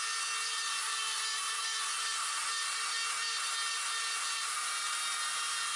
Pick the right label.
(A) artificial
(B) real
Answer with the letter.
B